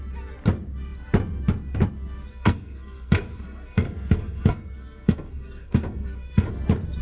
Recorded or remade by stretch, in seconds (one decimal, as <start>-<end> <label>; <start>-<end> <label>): 0.0-2.3 recorded; 2.3-6.5 remade; 6.5-7.0 recorded